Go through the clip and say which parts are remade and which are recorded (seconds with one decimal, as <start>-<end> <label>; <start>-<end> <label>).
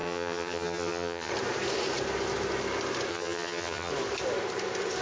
0.0-1.3 remade; 1.3-3.1 recorded; 3.1-3.9 remade; 3.9-5.0 recorded